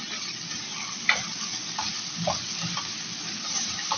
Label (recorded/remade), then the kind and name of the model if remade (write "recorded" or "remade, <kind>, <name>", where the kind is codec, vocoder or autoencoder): recorded